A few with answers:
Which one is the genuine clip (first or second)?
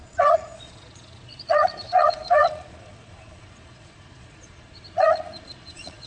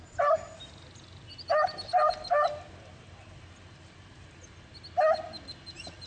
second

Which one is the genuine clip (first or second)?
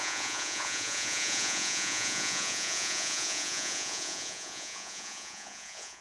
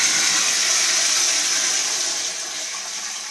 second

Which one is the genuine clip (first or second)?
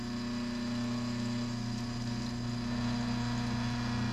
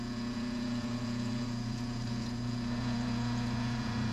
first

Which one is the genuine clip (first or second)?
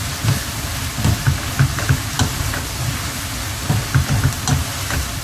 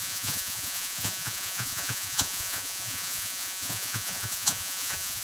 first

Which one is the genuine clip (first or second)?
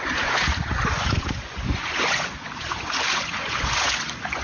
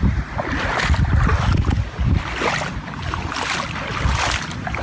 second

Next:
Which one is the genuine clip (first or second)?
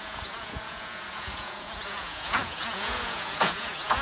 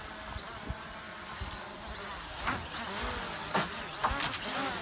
second